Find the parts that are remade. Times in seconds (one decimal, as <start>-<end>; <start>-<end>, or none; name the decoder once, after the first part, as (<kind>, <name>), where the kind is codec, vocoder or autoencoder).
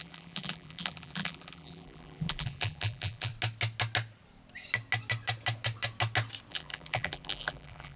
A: 0.0-3.3 (vocoder, BigVGAN v2); 6.5-8.0